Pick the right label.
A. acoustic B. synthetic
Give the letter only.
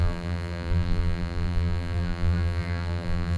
B